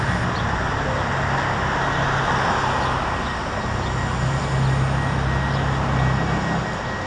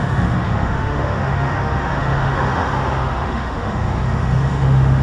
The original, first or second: first